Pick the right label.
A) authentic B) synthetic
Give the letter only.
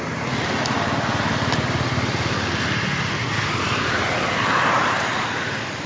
A